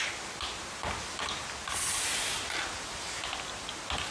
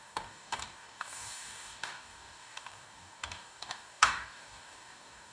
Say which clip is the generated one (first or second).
second